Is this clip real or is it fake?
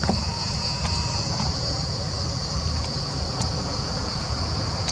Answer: fake